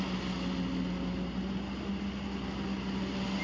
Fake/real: real